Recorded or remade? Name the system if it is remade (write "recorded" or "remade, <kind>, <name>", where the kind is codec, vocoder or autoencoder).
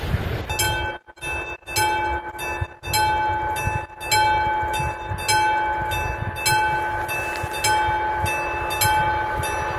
recorded